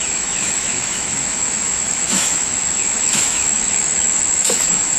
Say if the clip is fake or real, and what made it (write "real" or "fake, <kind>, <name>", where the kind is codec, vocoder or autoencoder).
fake, autoencoder, DAC-VAE